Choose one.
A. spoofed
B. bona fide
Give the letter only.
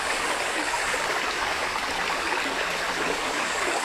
A